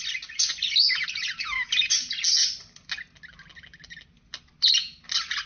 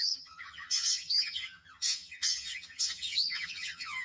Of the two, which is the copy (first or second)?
second